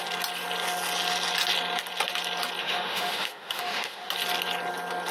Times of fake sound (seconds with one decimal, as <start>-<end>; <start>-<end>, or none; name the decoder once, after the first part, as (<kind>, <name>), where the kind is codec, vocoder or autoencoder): 2.6-4.1 (autoencoder, DAC-VAE)